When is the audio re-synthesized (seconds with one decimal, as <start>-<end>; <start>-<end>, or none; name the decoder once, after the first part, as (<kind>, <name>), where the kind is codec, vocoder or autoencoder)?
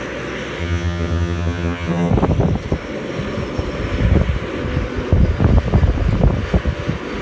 0.6-2.1 (vocoder, HiFi-GAN)